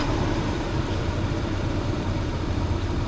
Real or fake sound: fake